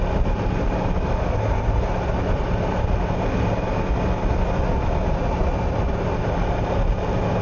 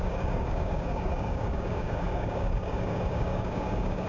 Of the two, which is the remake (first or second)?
second